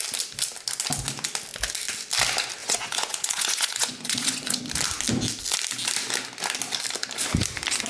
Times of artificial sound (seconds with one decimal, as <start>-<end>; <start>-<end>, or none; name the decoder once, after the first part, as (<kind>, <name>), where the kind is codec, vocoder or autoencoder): 2.6-4.6 (vocoder, Vocos)